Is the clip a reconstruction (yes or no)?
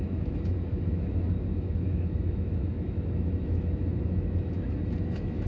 yes